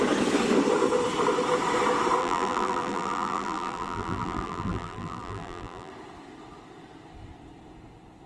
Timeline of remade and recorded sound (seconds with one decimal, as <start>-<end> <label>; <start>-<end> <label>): 0.0-2.2 recorded; 2.2-5.9 remade; 5.9-8.3 recorded